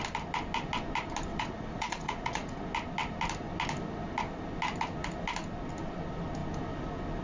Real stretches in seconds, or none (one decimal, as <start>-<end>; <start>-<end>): 0.0-1.3; 2.6-7.2